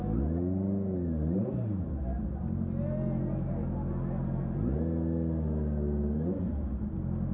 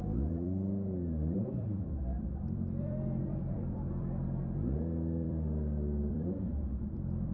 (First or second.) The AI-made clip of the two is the second